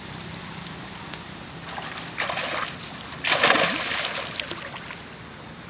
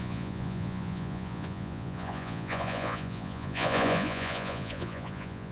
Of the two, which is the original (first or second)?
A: first